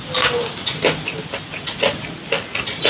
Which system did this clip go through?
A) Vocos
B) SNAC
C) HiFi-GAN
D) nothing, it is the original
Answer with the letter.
D